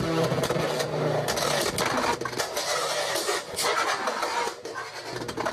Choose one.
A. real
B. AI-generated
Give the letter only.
A